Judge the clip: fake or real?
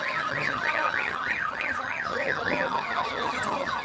fake